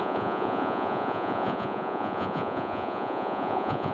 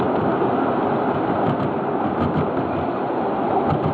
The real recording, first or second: second